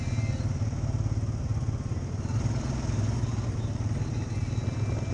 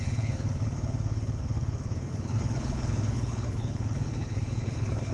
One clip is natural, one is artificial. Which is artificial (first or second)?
second